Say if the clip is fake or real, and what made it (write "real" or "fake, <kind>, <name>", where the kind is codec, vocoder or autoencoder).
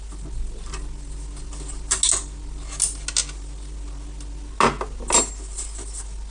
real